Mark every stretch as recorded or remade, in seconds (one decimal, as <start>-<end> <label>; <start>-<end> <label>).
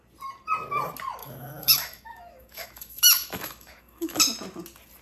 0.0-1.2 recorded; 1.2-4.2 remade; 4.2-5.0 recorded